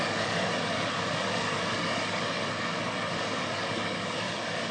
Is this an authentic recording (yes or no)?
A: no